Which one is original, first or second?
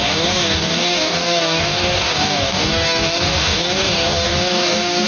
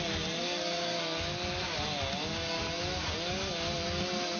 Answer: second